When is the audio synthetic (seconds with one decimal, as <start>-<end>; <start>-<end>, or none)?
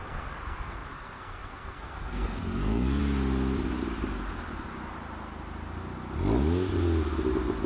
0.0-3.0